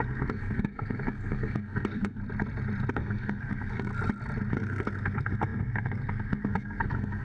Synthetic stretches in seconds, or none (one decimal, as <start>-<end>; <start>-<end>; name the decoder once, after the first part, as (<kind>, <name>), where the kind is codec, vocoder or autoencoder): 0.0-2.2 (codec, SNAC); 2.9-3.9; 4.5-7.2